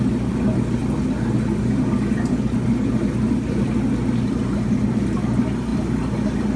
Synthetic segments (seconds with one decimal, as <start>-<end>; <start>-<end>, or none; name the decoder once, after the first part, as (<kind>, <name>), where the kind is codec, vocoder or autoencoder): none